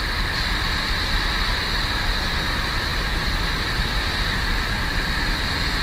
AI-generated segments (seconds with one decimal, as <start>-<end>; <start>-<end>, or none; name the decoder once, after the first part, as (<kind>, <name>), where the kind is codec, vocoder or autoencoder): none